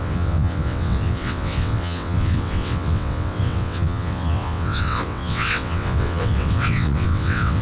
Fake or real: fake